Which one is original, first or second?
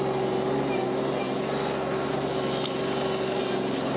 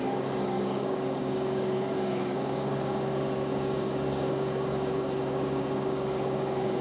first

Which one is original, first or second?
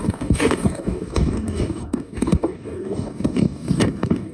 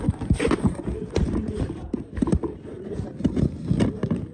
second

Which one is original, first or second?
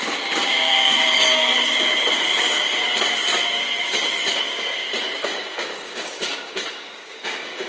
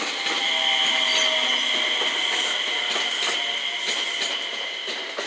second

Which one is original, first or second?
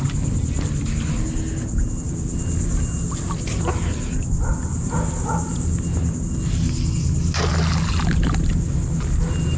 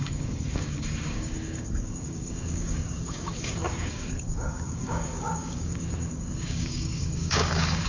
first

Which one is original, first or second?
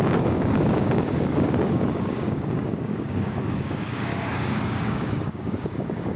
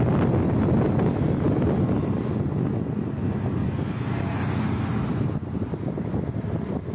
second